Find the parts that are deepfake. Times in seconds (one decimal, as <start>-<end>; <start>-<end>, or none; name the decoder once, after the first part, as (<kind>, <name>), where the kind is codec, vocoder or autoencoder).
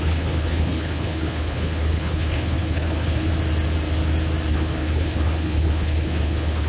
0.0-3.3 (codec, HILCodec); 4.5-6.7